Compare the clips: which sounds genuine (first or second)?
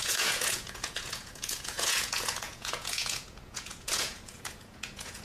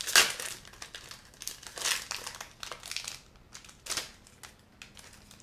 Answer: second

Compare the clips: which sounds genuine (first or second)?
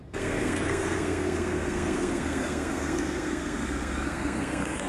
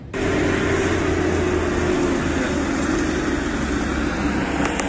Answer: second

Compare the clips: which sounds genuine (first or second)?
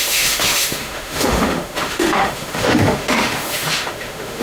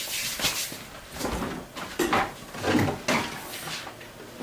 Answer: second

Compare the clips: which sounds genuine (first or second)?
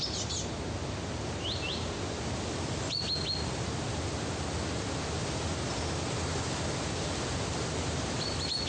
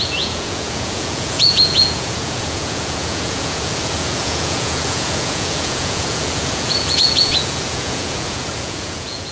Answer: first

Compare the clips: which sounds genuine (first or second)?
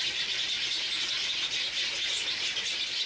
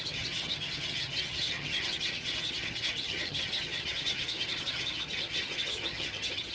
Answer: first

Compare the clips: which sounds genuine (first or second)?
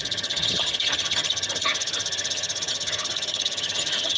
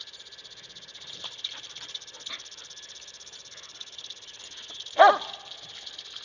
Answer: second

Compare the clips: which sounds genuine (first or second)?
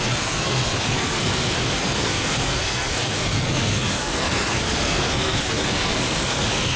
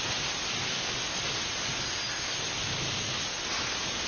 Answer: second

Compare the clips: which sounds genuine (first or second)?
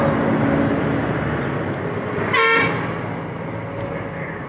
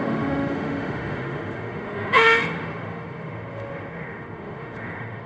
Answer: first